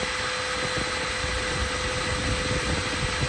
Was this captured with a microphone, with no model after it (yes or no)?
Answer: yes